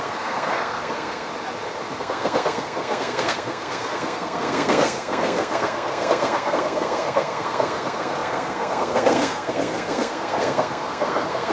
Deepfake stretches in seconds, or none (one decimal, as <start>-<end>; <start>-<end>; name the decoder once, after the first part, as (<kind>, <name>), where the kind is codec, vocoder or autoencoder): 0.0-1.3 (codec, SNAC); 2.0-11.5

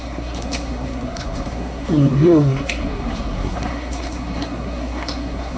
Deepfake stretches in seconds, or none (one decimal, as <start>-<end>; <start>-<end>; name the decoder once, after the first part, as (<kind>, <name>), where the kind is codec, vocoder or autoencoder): 0.0-5.6 (codec, SNAC)